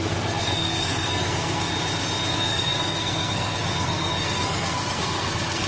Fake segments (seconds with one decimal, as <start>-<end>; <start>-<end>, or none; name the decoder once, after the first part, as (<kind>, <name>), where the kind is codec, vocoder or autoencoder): 0.0-1.7 (codec, SNAC); 2.3-5.7